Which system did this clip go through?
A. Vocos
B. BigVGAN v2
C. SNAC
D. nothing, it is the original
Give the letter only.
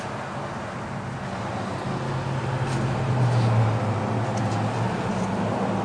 D